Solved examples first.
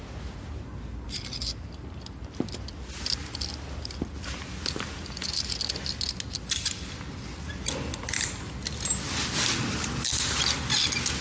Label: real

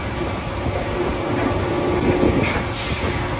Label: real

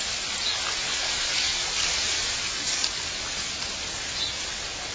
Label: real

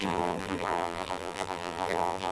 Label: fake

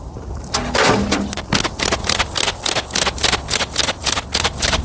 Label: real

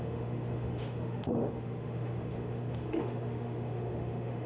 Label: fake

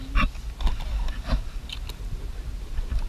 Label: real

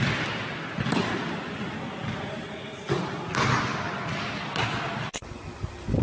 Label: real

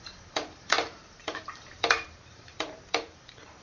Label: fake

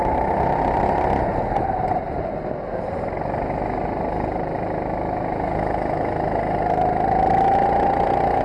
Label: real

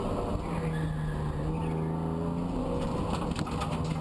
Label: real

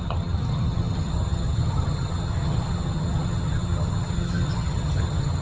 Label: fake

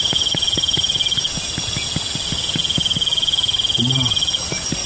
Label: real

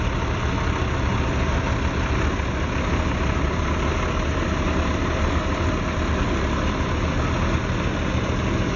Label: real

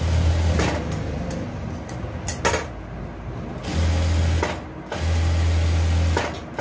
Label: real